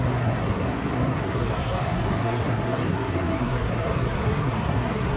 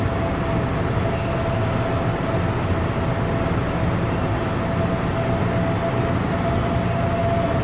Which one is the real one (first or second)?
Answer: second